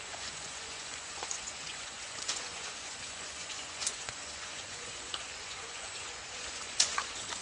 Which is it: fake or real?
fake